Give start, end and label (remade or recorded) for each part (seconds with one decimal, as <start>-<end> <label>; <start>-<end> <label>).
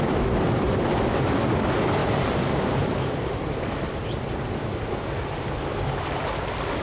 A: 0.0-2.0 recorded; 2.0-6.1 remade; 6.1-6.8 recorded